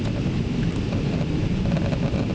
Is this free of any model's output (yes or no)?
no